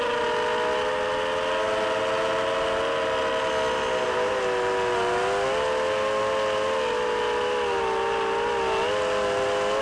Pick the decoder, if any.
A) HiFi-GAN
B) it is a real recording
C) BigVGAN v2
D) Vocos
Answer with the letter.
B